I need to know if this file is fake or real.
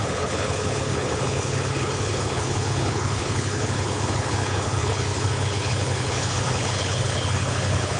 fake